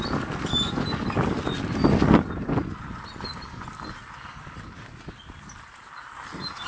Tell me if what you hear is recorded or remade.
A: recorded